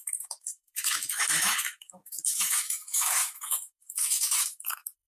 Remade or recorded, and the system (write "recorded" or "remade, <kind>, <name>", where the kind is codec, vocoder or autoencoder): remade, autoencoder, DAC-VAE